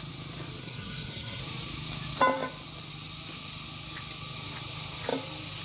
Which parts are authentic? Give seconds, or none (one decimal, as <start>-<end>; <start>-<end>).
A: 0.0-0.6; 1.4-5.6